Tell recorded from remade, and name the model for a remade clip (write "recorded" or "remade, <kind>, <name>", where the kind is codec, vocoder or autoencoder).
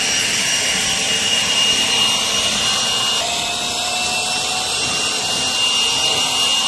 recorded